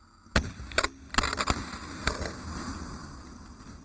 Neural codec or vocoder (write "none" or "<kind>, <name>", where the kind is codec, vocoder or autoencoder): none